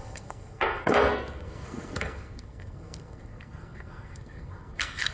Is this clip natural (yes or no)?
no